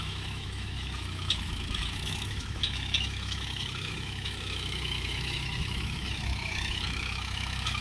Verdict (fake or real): fake